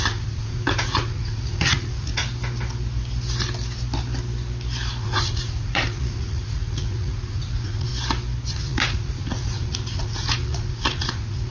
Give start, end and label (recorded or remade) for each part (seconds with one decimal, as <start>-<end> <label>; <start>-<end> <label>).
0.0-2.2 remade; 2.2-5.0 recorded; 5.0-7.9 remade; 7.9-8.5 recorded; 8.5-11.5 remade